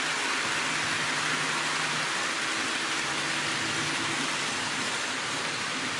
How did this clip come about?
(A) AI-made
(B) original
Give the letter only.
B